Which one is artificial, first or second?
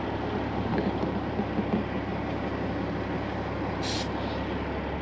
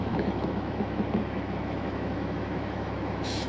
second